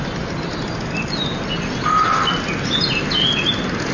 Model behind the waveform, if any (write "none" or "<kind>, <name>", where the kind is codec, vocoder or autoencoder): none